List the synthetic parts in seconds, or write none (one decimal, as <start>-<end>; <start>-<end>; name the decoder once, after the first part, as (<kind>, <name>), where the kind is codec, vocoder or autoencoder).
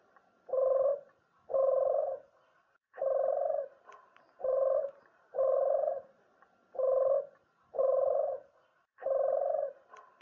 0.0-6.3 (vocoder, BigVGAN v2); 7.4-10.2